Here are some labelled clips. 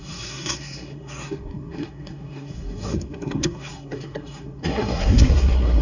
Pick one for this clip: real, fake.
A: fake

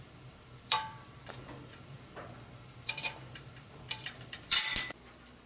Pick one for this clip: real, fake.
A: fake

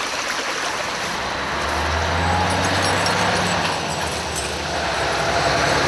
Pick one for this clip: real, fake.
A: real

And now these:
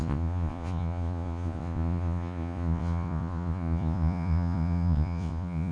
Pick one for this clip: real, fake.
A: fake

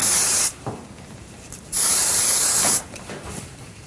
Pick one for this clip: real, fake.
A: fake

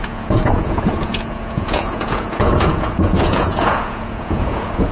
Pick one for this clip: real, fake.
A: fake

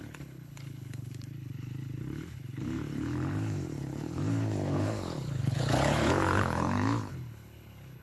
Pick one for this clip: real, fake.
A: fake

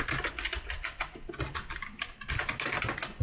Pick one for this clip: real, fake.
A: real